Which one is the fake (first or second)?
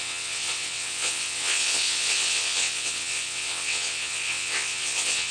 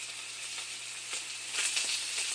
first